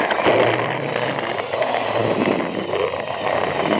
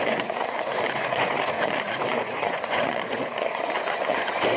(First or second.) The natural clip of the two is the first